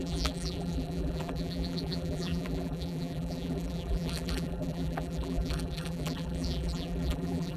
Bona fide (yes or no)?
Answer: no